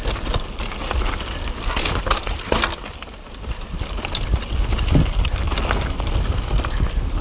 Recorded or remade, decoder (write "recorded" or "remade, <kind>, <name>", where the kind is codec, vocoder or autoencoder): recorded